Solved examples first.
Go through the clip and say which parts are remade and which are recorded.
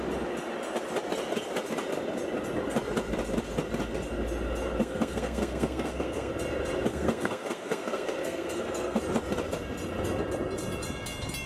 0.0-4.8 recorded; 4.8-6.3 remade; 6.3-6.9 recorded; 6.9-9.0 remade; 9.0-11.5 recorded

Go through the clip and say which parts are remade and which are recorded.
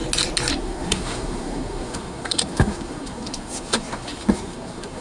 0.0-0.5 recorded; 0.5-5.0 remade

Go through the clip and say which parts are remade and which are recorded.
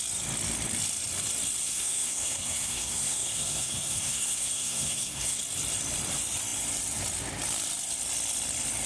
0.0-1.6 recorded; 1.6-5.4 remade; 5.4-8.9 recorded